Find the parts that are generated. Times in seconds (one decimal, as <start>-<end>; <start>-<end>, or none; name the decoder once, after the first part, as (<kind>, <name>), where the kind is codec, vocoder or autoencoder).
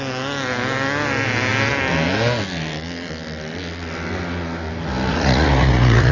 5.1-6.1 (vocoder, Vocos)